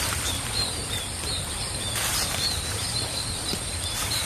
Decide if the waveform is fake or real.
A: fake